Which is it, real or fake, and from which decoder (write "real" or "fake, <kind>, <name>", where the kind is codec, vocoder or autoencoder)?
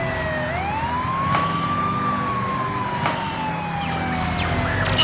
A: real